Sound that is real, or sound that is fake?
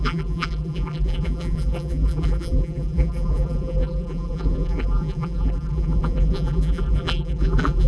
fake